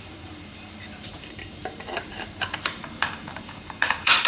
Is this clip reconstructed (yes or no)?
yes